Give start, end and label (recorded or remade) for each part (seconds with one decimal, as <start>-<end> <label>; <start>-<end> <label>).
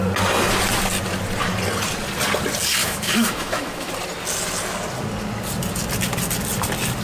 0.0-2.8 recorded; 2.8-3.9 remade; 3.9-7.0 recorded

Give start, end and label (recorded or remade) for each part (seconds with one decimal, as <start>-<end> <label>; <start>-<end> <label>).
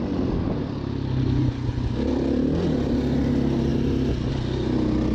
0.0-5.1 recorded